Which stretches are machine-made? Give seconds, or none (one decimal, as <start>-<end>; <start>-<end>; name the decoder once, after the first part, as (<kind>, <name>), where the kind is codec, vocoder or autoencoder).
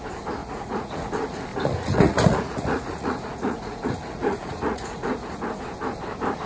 0.4-1.1 (vocoder, Vocos); 1.5-5.4